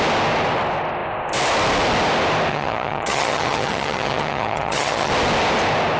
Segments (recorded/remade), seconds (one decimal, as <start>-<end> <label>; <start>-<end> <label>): 0.0-2.5 recorded; 2.5-5.1 remade; 5.1-6.0 recorded